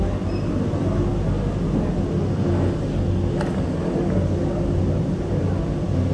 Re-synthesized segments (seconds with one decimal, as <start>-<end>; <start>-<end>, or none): none